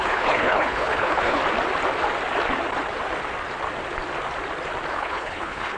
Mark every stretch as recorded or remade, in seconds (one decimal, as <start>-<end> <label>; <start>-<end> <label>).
0.0-1.4 remade; 1.4-4.9 recorded; 4.9-5.8 remade